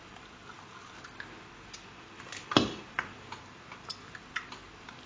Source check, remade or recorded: recorded